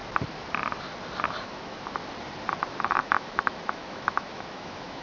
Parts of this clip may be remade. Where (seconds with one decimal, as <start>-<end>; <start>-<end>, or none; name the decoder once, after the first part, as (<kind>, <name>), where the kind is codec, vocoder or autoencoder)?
1.4-2.0 (autoencoder, DAC-VAE); 2.8-5.0